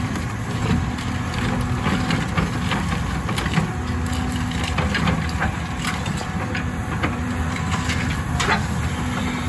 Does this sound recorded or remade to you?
recorded